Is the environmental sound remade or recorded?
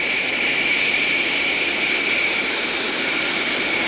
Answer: recorded